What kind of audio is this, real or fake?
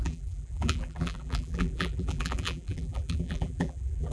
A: fake